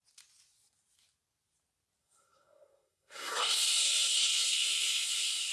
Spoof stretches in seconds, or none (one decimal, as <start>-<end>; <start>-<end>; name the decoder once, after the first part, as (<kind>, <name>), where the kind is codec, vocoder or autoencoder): 2.0-5.5 (codec, SNAC)